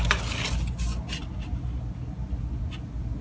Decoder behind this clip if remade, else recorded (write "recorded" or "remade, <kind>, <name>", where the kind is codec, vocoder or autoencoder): recorded